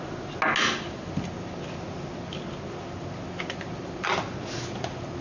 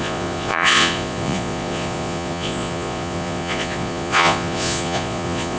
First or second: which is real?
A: first